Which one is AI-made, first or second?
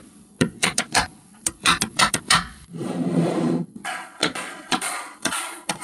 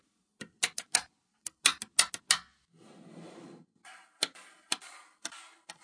first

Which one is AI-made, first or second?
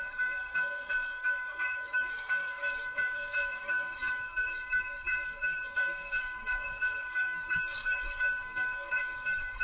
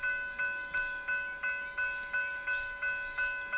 first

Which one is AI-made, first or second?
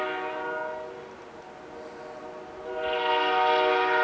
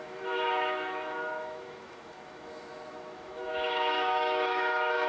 second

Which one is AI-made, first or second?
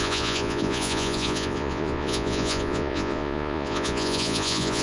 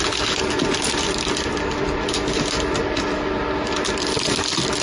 first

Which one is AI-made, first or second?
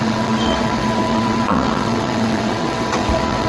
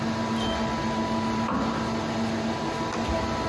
first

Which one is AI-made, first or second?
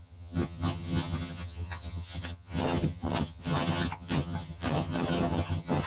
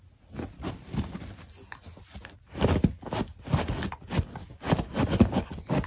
first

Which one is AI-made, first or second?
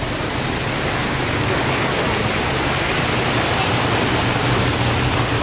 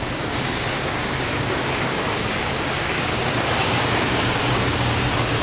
second